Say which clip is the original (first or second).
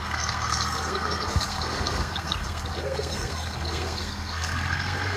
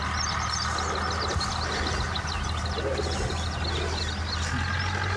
second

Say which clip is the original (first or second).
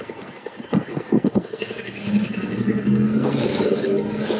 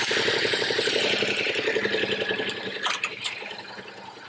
second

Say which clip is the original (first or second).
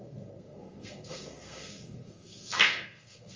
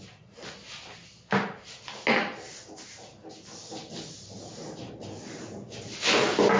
second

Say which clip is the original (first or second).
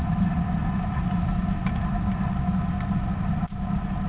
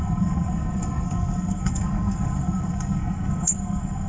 first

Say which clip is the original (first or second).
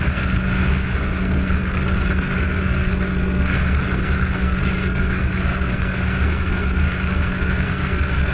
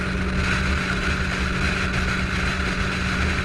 second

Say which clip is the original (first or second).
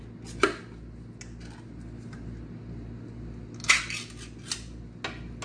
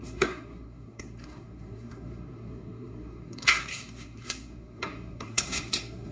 first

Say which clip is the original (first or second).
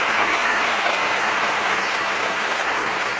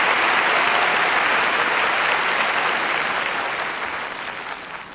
second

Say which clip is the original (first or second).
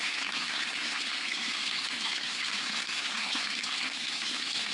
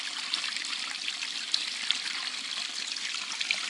second